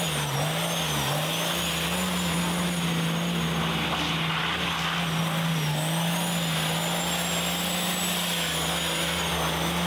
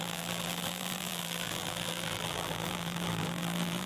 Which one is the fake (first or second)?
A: second